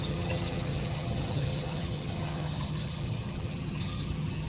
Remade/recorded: remade